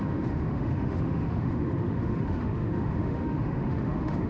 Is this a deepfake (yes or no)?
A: yes